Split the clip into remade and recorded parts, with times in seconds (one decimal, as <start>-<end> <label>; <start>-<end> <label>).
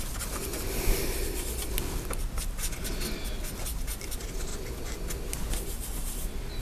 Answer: 0.0-6.6 recorded